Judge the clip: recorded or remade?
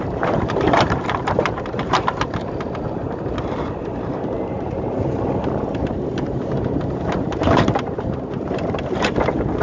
remade